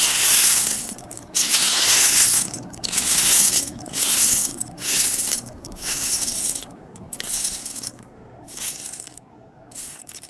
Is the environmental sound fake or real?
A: fake